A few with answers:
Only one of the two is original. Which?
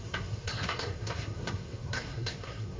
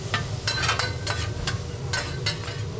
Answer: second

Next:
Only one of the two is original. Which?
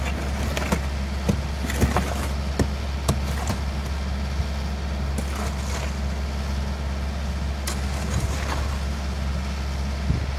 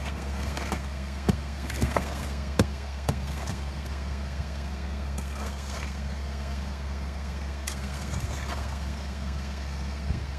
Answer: first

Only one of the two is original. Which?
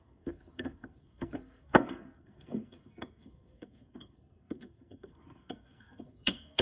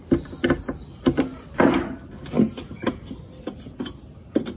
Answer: second